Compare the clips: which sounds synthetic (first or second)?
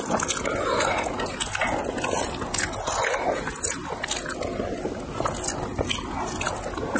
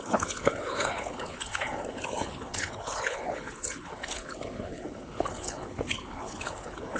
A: second